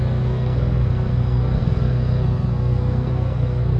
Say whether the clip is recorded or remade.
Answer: remade